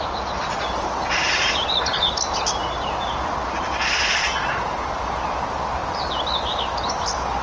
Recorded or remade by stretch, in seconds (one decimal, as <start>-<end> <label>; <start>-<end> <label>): 0.0-7.4 recorded

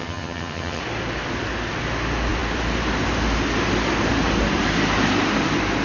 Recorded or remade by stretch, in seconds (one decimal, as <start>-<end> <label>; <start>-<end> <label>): 0.0-0.8 remade; 0.8-5.8 recorded

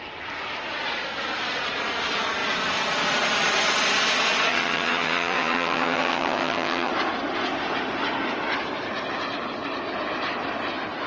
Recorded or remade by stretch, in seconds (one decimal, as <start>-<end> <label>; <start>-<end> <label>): 0.0-4.5 recorded; 4.5-6.9 remade; 6.9-11.1 recorded